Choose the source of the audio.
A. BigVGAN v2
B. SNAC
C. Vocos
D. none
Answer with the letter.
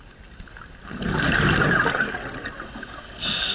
D